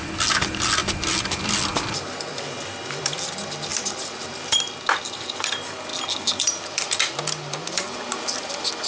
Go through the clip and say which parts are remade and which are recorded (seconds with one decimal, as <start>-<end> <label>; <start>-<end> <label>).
0.0-3.7 recorded; 3.7-5.3 remade; 5.3-8.9 recorded